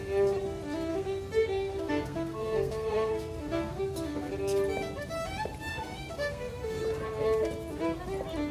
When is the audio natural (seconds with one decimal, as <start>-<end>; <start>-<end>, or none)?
0.0-0.9; 4.3-5.7; 6.8-8.5